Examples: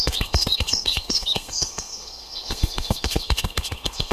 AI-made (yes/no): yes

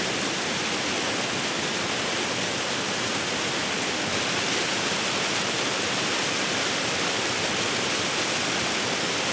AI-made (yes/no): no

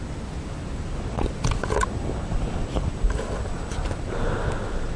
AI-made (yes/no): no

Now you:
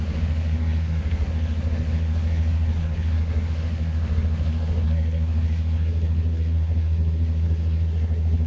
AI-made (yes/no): yes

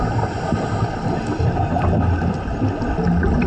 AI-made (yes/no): no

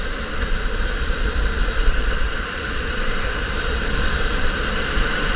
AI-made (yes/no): no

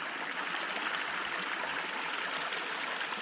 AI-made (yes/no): no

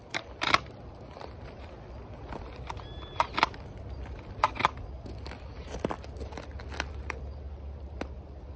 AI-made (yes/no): no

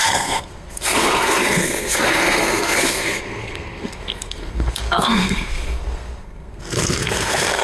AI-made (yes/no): yes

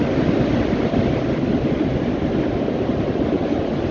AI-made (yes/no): no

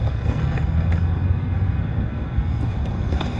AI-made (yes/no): yes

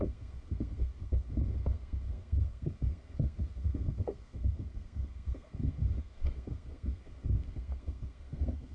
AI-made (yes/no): yes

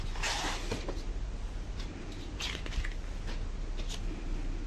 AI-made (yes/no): no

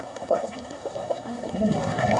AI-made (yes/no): yes